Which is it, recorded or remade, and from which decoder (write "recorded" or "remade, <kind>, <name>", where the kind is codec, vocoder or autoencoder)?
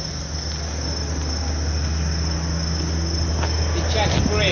recorded